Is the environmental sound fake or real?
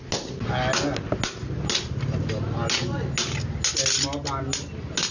real